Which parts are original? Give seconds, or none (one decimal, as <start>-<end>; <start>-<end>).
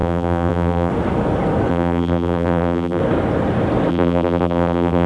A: 0.9-1.7; 3.0-3.9